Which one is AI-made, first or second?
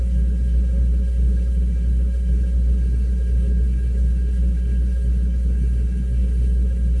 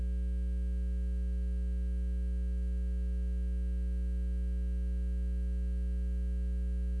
first